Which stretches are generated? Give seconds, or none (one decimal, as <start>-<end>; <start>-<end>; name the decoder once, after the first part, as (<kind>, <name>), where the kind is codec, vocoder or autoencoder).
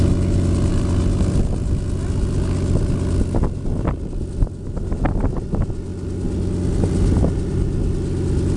none